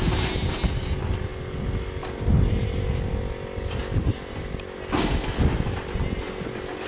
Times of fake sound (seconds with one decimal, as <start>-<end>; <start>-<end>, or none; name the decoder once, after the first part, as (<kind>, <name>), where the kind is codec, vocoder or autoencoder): none